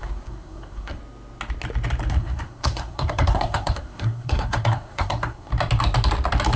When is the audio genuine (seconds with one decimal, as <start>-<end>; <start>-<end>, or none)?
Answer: 1.0-2.1; 5.5-6.6